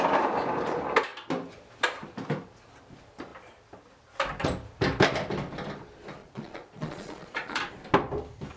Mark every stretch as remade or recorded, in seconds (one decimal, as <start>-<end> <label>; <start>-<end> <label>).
0.0-6.2 recorded; 6.2-7.6 remade; 7.6-8.6 recorded